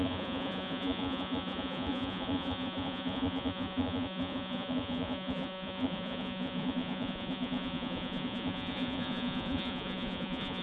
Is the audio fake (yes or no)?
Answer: yes